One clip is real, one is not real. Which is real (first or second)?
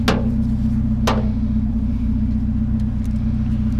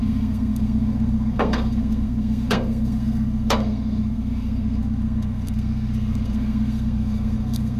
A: first